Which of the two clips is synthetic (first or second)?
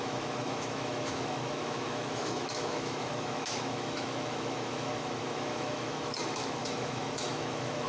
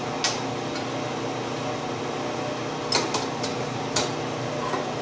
first